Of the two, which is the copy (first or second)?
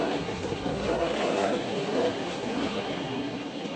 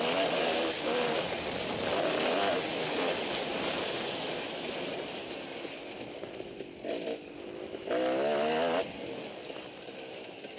first